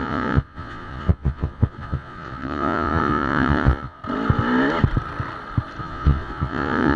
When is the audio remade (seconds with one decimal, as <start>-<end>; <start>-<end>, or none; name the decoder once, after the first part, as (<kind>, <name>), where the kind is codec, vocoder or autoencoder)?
0.0-4.0 (vocoder, Vocos); 5.8-7.0